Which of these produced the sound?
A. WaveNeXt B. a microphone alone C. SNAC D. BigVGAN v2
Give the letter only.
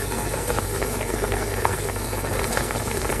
C